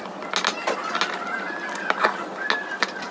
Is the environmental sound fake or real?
real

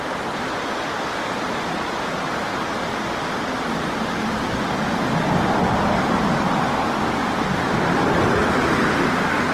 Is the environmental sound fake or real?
real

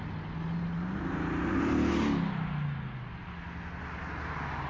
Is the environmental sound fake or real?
real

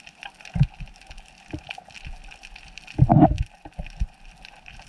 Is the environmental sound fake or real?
real